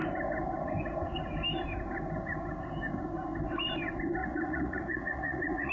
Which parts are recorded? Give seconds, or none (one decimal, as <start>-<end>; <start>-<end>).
0.0-4.2